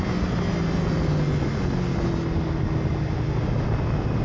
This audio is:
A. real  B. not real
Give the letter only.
A